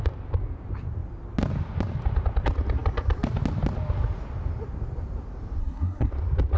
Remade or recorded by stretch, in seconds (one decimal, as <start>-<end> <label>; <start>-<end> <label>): 0.0-5.6 recorded; 5.6-6.1 remade; 6.1-6.6 recorded